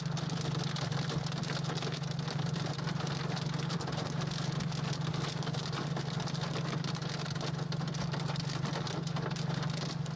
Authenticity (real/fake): real